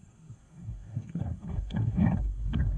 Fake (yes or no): yes